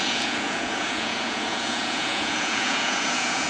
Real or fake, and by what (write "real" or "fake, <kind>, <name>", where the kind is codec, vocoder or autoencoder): fake, vocoder, Vocos